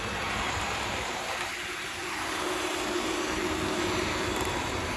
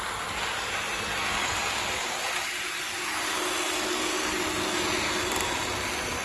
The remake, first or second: first